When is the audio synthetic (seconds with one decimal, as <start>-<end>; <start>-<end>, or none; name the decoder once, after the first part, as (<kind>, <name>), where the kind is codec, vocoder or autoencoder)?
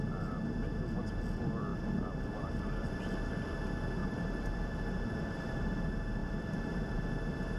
1.7-2.9 (vocoder, BigVGAN v2); 4.0-5.7; 6.2-7.1